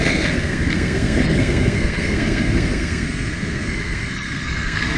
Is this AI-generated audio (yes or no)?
yes